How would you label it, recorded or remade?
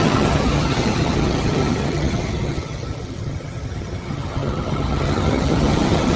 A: remade